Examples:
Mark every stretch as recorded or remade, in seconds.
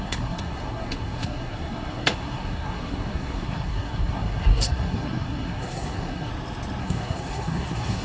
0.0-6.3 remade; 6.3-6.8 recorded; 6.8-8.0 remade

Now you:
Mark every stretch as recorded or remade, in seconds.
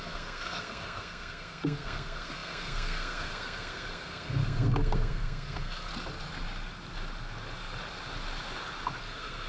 0.0-5.9 remade; 5.9-9.0 recorded; 9.0-9.5 remade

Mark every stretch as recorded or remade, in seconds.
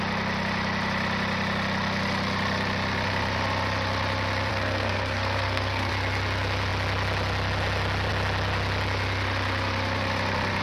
0.0-4.5 recorded; 4.5-5.9 remade; 5.9-10.6 recorded